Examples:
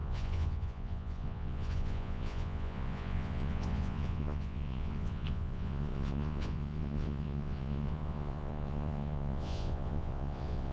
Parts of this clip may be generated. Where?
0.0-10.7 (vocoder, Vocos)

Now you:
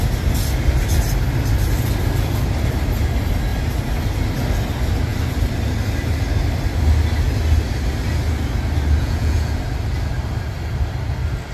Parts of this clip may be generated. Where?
9.0-9.6 (vocoder, Vocos)

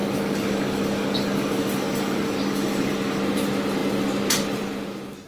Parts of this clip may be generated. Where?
0.0-3.2 (codec, DAC)

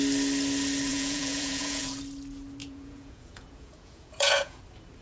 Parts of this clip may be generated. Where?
0.9-2.0 (vocoder, Vocos); 2.6-4.6

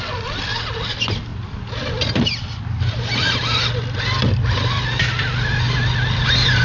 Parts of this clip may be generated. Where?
none

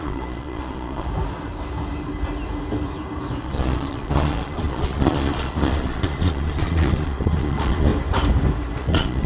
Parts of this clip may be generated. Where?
0.0-1.1 (vocoder, Vocos); 3.4-7.9; 8.8-9.3